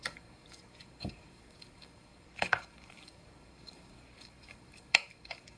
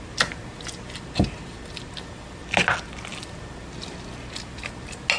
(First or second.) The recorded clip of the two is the second